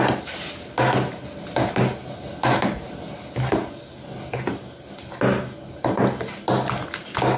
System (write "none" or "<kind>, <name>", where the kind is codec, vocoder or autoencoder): none